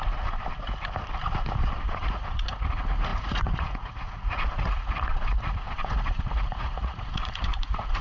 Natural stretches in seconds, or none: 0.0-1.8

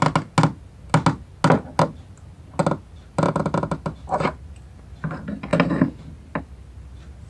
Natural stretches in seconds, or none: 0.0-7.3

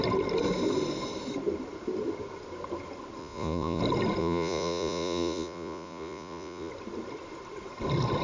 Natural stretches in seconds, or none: 0.0-3.2; 3.8-4.2; 6.7-8.2